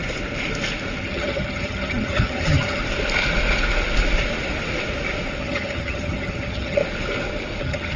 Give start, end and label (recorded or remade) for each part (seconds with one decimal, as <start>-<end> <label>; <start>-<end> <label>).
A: 0.0-1.0 recorded; 1.0-2.8 remade; 2.8-5.4 recorded; 5.4-6.8 remade; 6.8-7.6 recorded; 7.6-8.0 remade